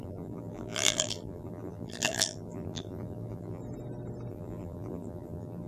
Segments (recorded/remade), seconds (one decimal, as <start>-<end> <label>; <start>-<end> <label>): 0.0-3.6 remade; 3.6-4.3 recorded; 4.3-5.7 remade